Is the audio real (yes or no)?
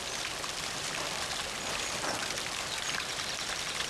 yes